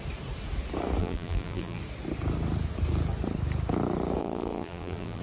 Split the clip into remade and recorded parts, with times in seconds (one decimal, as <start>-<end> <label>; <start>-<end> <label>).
0.0-1.0 recorded; 1.0-1.8 remade; 1.8-4.2 recorded; 4.2-5.2 remade